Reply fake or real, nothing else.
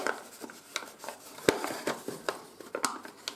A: real